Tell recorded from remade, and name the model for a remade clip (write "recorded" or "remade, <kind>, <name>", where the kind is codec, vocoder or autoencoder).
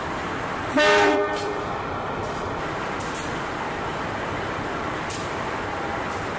remade, vocoder, BigVGAN v2